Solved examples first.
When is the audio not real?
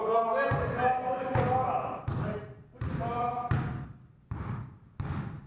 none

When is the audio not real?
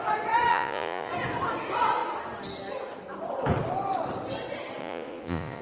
0.5-1.1; 4.8-5.6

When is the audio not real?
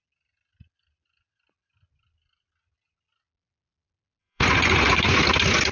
4.2-5.2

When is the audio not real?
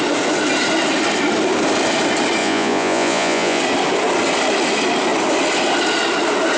2.4-3.6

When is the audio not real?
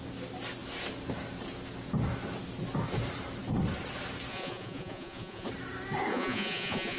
4.3-5.5; 6.1-7.0